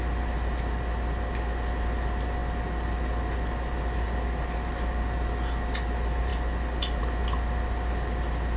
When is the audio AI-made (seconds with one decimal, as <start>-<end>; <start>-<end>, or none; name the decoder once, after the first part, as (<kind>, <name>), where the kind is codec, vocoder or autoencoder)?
none